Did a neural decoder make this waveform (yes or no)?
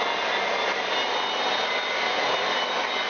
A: no